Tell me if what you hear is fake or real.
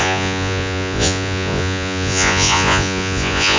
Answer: fake